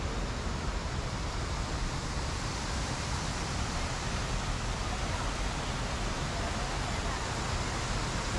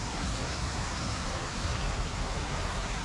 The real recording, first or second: first